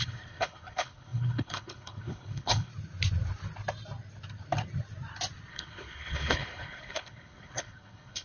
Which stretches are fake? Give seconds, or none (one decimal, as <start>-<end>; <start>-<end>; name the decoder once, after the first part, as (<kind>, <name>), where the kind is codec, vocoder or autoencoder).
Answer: 0.0-2.7 (codec, HILCodec); 5.5-8.2